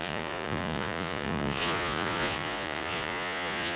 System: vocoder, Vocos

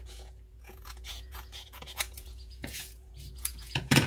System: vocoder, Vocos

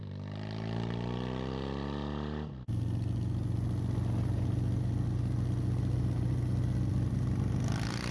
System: none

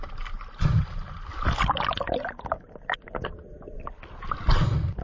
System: none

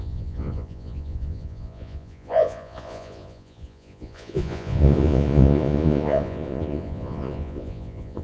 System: vocoder, Vocos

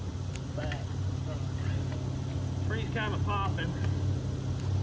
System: none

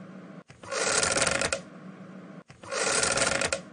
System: none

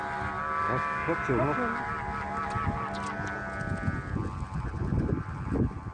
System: none